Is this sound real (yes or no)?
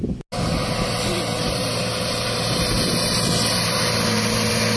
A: yes